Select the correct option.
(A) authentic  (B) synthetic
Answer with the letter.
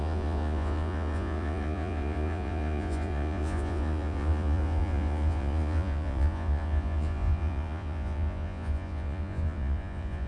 B